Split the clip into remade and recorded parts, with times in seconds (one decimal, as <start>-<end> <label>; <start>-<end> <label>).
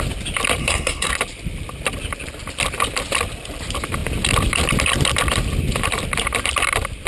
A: 0.0-0.6 recorded; 0.6-1.1 remade; 1.1-7.1 recorded